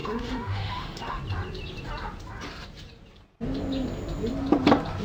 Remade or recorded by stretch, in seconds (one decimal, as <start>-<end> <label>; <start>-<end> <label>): 0.0-1.2 remade; 1.2-5.0 recorded